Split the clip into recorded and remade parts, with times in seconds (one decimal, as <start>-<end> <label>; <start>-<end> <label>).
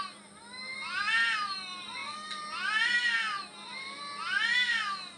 0.0-5.2 recorded